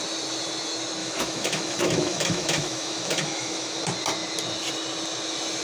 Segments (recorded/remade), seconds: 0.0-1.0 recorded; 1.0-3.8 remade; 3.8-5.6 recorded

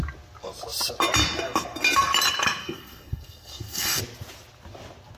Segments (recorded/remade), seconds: 0.0-2.6 recorded; 2.6-4.0 remade; 4.0-5.2 recorded

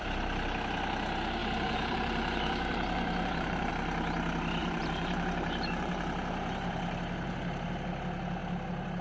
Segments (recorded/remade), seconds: 0.0-1.4 recorded; 1.4-3.7 remade; 3.7-4.6 recorded; 4.6-7.7 remade; 7.7-9.0 recorded

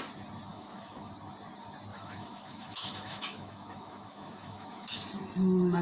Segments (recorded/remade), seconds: 0.0-0.5 recorded; 0.5-1.1 remade; 1.1-1.9 recorded; 1.9-4.9 remade; 4.9-5.8 recorded

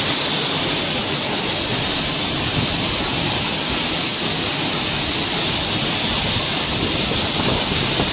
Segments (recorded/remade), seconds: 0.0-8.1 recorded

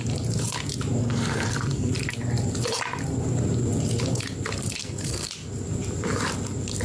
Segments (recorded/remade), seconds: 0.0-1.0 recorded; 1.0-1.9 remade; 1.9-4.8 recorded; 4.8-5.3 remade; 5.3-6.8 recorded